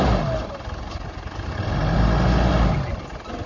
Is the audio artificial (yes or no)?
no